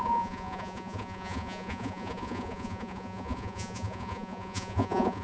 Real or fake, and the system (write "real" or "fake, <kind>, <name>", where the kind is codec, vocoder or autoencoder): fake, vocoder, Vocos